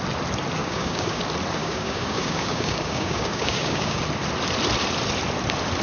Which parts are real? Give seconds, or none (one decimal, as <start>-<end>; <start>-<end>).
0.0-0.6; 1.2-1.6; 4.0-5.8